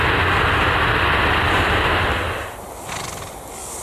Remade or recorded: recorded